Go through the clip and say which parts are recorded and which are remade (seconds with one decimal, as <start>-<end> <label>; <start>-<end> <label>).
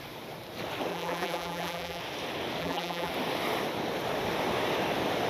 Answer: 0.0-0.9 recorded; 0.9-2.0 remade; 2.0-2.6 recorded; 2.6-3.1 remade; 3.1-5.3 recorded